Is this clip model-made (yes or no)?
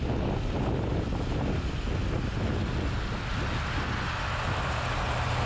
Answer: no